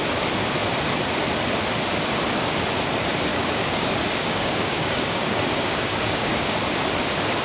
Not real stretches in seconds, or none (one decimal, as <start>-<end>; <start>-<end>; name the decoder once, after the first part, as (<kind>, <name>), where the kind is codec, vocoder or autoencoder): 3.3-6.6 (codec, DAC)